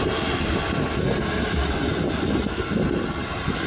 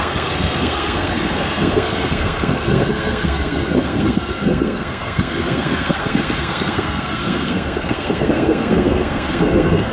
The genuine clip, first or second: first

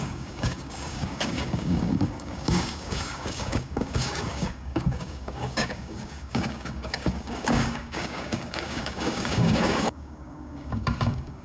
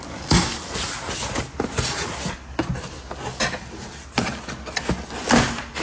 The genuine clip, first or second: second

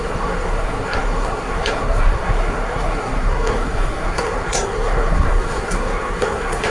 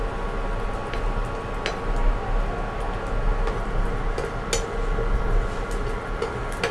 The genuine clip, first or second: second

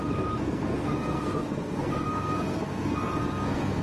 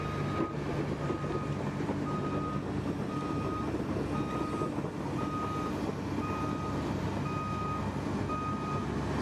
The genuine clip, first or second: second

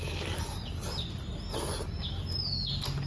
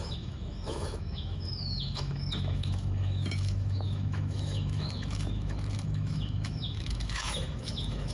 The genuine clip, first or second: first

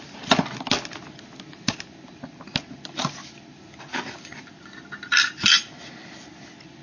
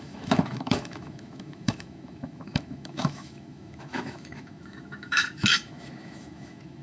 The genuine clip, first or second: first